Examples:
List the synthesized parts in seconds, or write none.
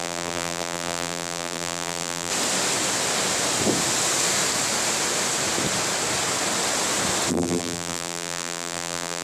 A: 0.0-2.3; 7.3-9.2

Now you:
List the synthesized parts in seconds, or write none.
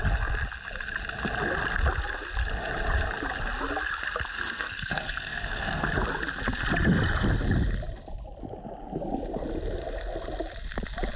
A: 4.3-5.9